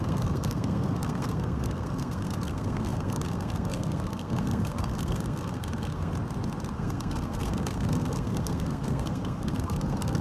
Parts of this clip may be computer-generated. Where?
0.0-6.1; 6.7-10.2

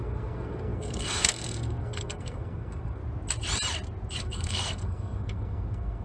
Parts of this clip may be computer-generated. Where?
0.0-3.0; 4.2-6.0

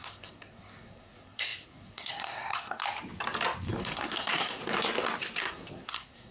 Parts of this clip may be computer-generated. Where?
0.0-2.8; 3.8-4.6; 5.4-6.3